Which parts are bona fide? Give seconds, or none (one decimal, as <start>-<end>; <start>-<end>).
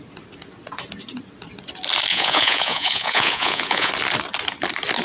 0.0-2.1; 3.9-5.0